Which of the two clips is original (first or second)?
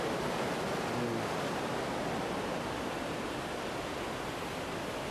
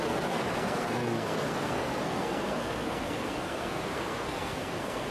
first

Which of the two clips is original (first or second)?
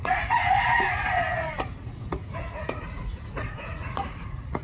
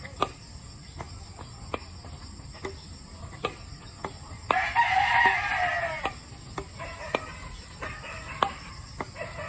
second